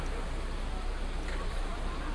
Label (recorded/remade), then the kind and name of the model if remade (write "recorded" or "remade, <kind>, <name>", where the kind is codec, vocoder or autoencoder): recorded